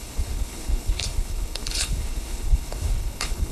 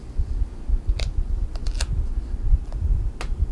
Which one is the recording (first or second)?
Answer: second